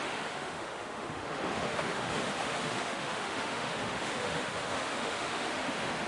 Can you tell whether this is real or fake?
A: fake